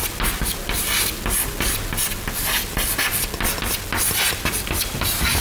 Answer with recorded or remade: recorded